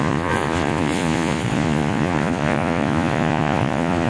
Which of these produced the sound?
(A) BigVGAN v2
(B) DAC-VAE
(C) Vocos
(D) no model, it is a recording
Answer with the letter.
C